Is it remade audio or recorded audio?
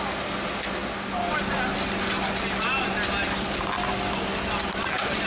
recorded